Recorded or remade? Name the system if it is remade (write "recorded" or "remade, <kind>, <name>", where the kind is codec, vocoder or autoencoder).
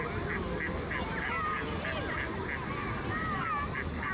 recorded